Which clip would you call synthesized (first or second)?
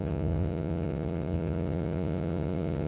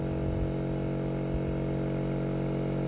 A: first